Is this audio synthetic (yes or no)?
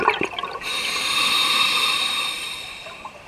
yes